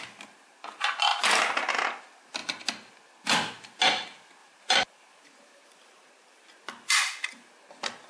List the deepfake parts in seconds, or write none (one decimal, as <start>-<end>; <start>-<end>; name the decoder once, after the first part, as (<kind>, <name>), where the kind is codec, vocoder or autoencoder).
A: 1.1-1.7 (vocoder, BigVGAN v2); 4.4-6.1